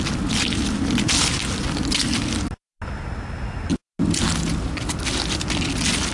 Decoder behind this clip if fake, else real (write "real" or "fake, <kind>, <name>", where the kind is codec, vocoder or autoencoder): real